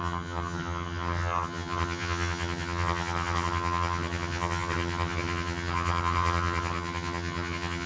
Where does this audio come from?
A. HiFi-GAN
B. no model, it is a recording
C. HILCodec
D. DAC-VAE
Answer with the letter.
A